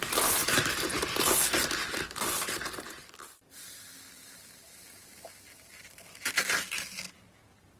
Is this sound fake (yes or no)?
no